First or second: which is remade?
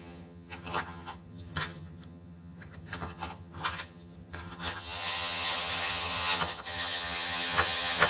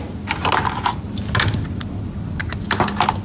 first